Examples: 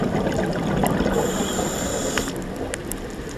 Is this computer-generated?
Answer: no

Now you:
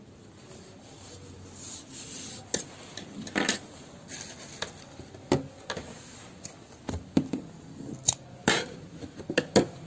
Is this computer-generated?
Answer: no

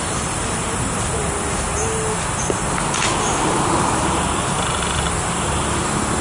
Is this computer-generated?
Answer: no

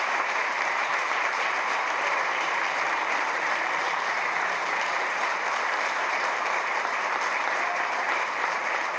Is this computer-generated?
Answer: yes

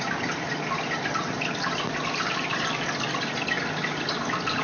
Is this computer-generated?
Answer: no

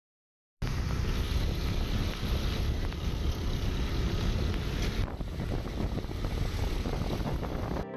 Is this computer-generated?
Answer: no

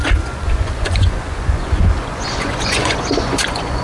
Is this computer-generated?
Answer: yes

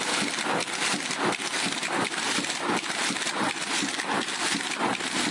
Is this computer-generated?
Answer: yes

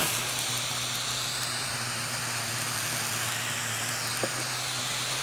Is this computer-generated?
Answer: no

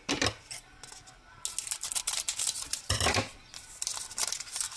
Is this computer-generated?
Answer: no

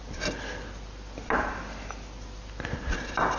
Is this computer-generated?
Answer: no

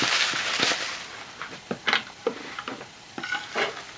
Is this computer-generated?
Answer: no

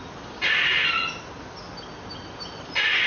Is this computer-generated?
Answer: no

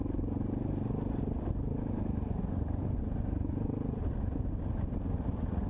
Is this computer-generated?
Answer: no